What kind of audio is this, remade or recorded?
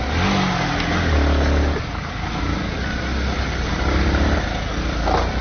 recorded